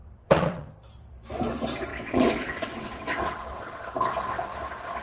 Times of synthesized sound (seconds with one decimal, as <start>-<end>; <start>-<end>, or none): 0.0-0.7; 1.9-3.8